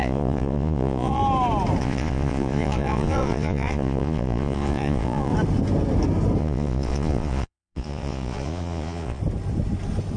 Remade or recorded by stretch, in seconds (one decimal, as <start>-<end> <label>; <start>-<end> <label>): 0.0-1.2 remade; 1.2-1.8 recorded; 1.8-5.3 remade; 5.3-6.4 recorded; 6.4-9.2 remade; 9.2-10.2 recorded